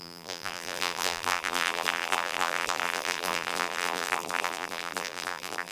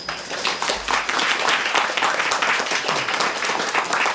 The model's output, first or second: first